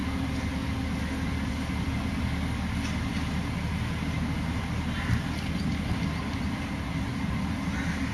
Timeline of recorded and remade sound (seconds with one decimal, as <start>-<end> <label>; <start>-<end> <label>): 0.0-8.1 recorded